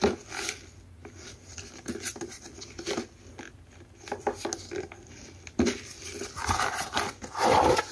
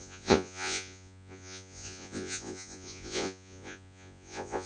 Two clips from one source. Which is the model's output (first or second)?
second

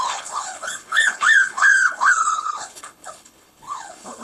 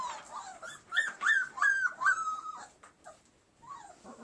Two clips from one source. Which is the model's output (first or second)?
first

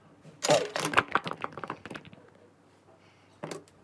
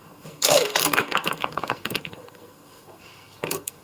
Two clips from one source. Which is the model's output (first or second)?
second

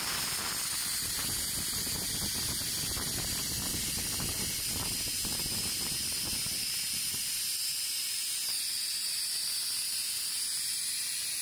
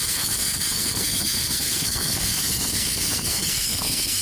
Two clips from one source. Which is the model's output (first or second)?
second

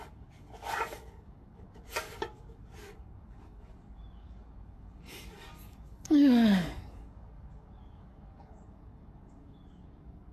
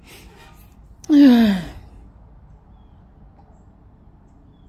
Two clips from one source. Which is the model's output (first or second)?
first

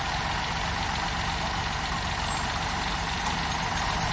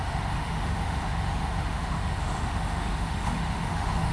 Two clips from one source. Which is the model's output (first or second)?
second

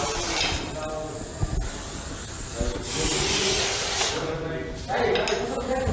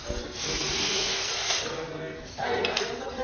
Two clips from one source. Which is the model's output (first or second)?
second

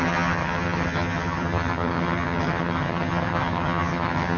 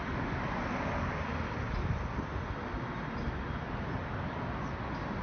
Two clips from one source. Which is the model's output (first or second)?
first